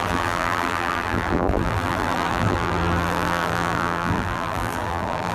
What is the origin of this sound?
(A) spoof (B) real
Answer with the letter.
A